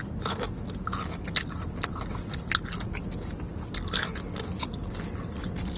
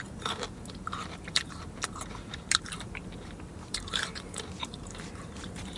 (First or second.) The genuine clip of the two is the first